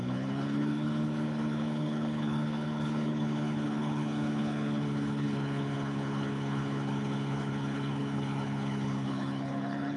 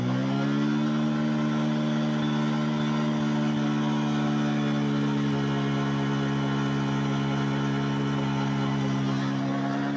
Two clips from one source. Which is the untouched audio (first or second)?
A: second